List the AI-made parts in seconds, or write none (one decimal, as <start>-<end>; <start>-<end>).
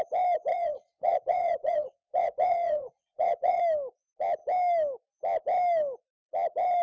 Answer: 0.5-3.6